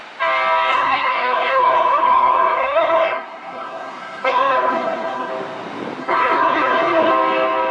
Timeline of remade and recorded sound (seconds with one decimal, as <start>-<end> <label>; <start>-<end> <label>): 0.0-0.7 recorded; 0.7-5.3 remade; 5.3-6.0 recorded; 6.0-7.1 remade; 7.1-7.7 recorded